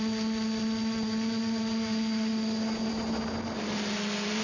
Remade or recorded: recorded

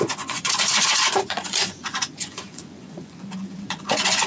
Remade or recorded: remade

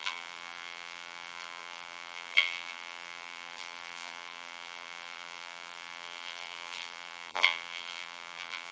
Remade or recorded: remade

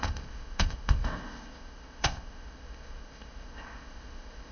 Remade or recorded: remade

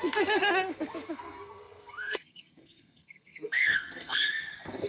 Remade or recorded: remade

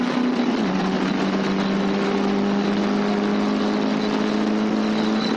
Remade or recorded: recorded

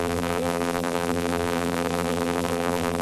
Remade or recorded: remade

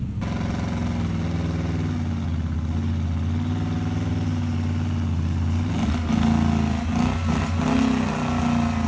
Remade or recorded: recorded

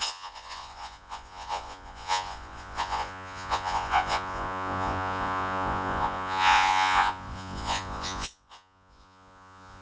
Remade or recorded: remade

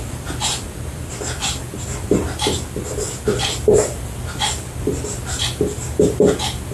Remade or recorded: recorded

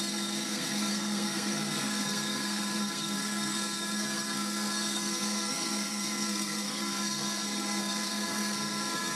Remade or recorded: remade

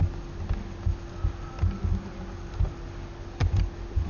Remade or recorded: recorded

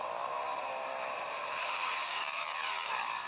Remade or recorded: remade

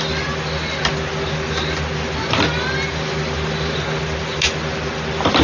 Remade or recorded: recorded